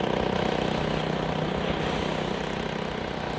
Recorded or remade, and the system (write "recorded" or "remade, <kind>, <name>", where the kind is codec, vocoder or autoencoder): recorded